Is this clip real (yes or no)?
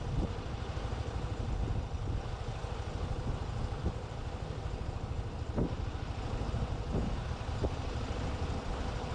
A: yes